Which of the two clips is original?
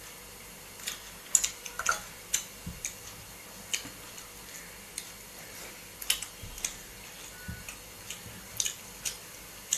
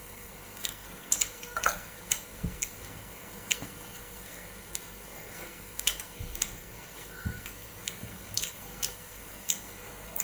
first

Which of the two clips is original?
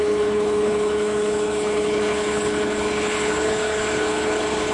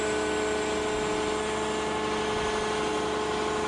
second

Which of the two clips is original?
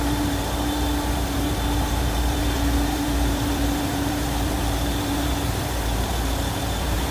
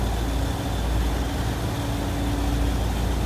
second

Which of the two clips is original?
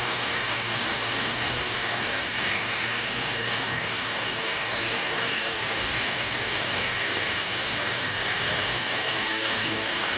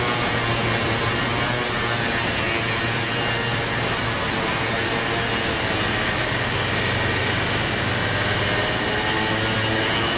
second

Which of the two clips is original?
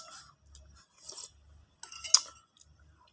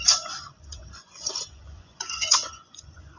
first